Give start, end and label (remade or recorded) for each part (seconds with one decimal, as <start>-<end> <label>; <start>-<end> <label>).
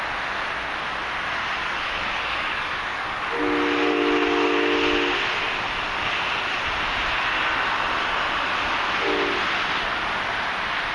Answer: 0.0-1.6 recorded; 1.6-3.2 remade; 3.2-10.9 recorded